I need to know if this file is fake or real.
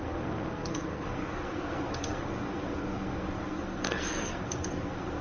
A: fake